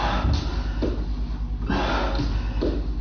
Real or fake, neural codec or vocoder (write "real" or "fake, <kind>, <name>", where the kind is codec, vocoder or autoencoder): real